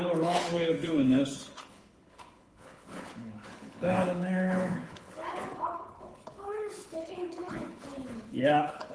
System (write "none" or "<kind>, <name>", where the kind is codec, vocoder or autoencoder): codec, HILCodec